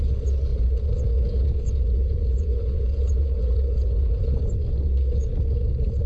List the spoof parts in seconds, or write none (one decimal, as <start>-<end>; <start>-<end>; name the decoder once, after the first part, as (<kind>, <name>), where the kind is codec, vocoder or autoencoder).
0.5-4.2 (vocoder, Vocos)